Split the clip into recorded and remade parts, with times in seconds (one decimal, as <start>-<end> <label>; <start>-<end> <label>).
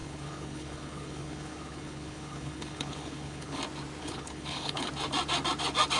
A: 0.0-3.6 remade; 3.6-4.0 recorded; 4.0-4.9 remade; 4.9-6.0 recorded